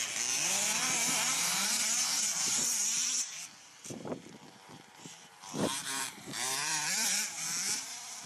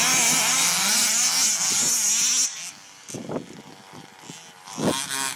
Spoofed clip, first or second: first